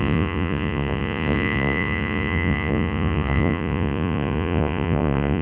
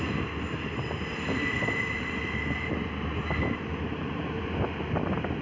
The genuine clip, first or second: second